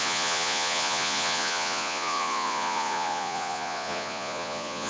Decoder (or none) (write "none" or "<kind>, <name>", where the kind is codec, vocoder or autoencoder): vocoder, Vocos